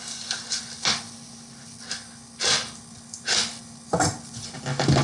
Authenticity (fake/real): real